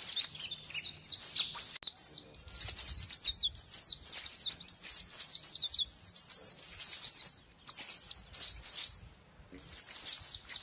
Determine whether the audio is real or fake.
real